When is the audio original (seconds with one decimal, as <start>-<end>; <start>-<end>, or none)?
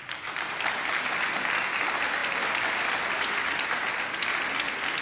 0.0-5.0